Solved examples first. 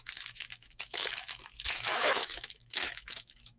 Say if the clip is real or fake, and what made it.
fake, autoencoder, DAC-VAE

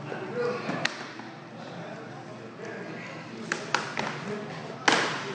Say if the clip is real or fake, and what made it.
real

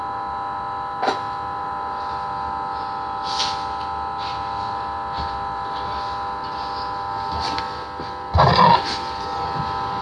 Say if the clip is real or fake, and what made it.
real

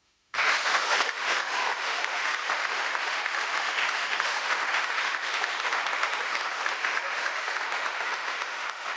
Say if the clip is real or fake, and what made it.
fake, autoencoder, DAC-VAE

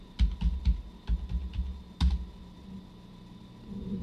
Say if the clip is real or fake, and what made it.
real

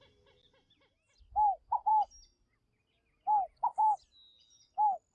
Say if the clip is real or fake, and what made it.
real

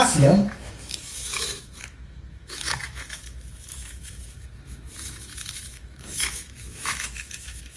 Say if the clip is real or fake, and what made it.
fake, autoencoder, DAC-VAE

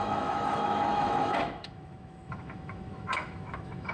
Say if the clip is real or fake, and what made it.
fake, autoencoder, DAC-VAE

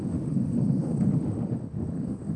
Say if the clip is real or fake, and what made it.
fake, autoencoder, DAC-VAE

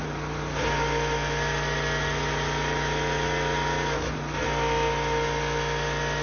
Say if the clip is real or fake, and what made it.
real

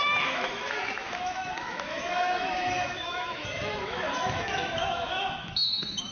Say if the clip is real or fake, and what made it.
fake, autoencoder, DAC-VAE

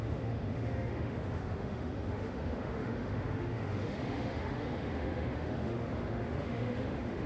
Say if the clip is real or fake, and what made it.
fake, autoencoder, DAC-VAE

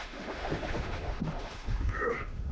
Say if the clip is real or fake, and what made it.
fake, autoencoder, DAC-VAE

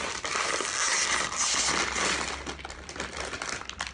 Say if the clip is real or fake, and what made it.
real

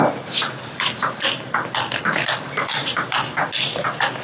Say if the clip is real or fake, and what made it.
real